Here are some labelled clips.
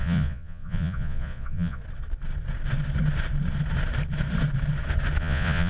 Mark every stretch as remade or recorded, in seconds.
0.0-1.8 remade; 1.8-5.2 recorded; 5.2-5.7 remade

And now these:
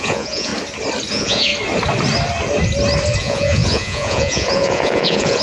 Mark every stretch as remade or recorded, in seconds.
0.0-0.5 remade; 0.5-1.1 recorded; 1.1-1.5 remade; 1.5-3.2 recorded; 3.2-5.4 remade

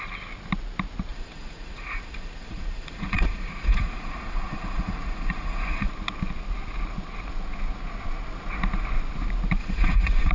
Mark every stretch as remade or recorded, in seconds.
0.0-1.1 recorded; 1.1-5.9 remade; 5.9-9.6 recorded; 9.6-10.3 remade

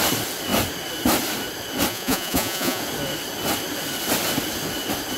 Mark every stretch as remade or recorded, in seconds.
0.0-1.9 recorded; 1.9-2.8 remade; 2.8-5.2 recorded